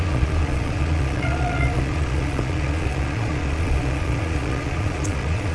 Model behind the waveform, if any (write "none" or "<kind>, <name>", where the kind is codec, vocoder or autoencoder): vocoder, Vocos